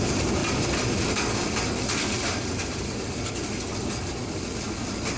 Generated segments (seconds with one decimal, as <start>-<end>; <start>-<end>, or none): 0.4-3.3